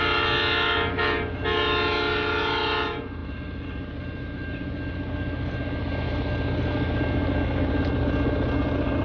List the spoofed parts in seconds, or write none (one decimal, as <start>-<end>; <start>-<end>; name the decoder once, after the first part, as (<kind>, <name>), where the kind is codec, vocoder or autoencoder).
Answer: none